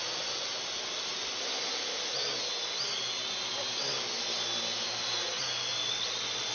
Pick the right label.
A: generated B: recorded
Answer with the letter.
B